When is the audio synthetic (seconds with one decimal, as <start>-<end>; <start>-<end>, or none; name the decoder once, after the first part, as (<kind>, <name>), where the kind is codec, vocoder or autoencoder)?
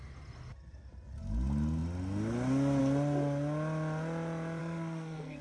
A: 4.6-5.4 (codec, SNAC)